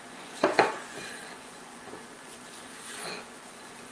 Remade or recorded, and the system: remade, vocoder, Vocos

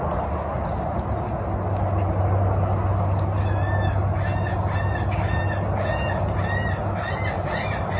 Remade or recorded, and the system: recorded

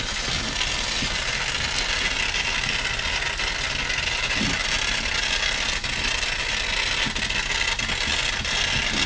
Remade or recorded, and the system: recorded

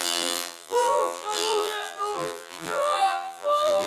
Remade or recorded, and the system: remade, vocoder, BigVGAN v2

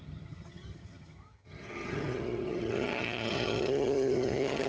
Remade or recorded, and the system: remade, vocoder, HiFi-GAN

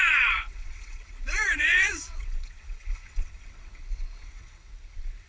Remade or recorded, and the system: remade, vocoder, WaveNeXt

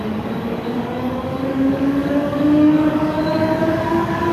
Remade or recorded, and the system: remade, codec, DAC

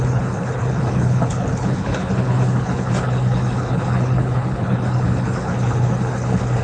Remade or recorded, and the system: remade, codec, HILCodec